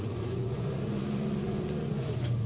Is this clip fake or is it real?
fake